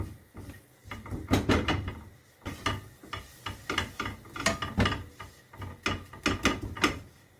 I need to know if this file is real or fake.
real